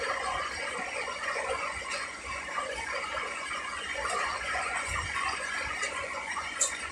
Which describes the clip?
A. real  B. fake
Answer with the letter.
B